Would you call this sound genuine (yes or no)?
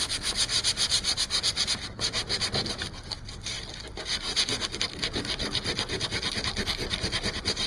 yes